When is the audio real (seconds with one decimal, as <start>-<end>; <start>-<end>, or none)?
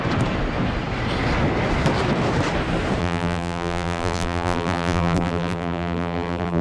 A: 0.0-3.0